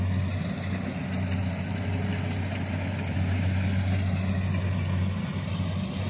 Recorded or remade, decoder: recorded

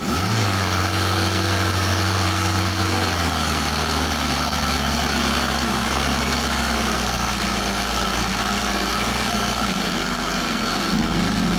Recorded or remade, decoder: remade, codec, SNAC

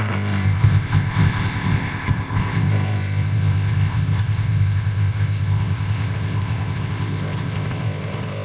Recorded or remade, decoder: remade, codec, ZipCodec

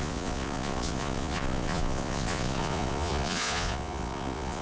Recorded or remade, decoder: remade, vocoder, Vocos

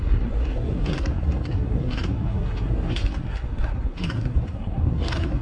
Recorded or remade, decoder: remade, codec, SNAC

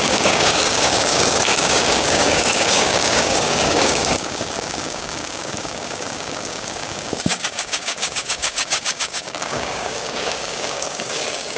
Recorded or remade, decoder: remade, codec, DAC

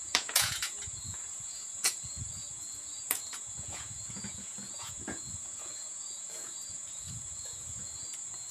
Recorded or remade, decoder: remade, vocoder, Vocos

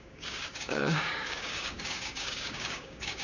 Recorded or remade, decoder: remade, codec, DAC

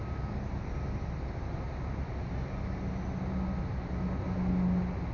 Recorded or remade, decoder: recorded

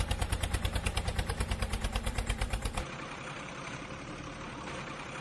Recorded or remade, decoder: remade, vocoder, BigVGAN v2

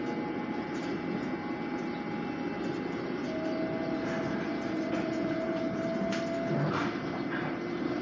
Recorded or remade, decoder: recorded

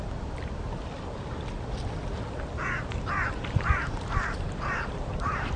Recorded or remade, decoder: recorded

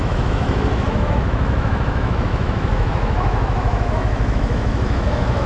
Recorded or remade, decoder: remade, autoencoder, DAC-VAE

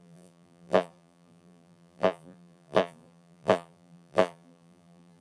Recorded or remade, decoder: remade, vocoder, BigVGAN v2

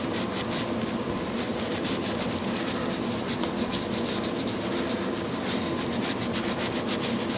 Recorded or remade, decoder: recorded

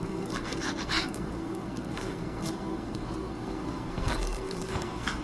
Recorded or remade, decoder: remade, codec, SNAC